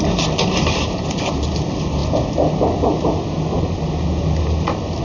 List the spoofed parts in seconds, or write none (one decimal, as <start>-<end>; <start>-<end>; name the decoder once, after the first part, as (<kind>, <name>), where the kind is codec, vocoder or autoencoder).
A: none